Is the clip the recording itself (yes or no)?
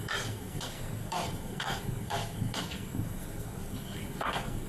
no